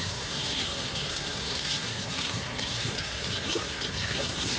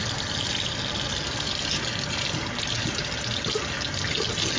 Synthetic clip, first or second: first